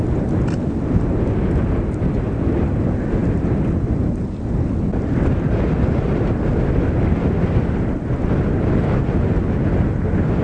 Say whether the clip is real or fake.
real